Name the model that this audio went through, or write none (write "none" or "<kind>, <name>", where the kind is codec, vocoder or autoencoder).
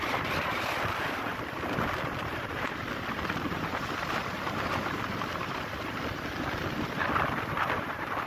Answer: none